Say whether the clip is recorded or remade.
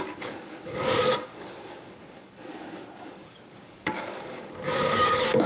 remade